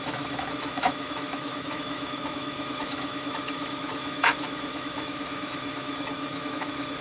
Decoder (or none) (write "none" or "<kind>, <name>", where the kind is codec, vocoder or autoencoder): autoencoder, DAC-VAE